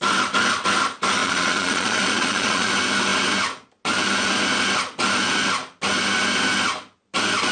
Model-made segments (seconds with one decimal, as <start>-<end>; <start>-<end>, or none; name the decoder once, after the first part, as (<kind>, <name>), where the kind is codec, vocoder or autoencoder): 1.2-2.7 (vocoder, Vocos)